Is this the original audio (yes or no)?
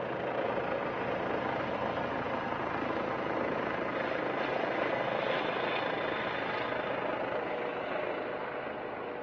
yes